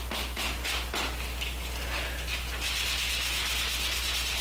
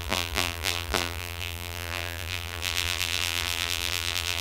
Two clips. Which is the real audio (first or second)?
first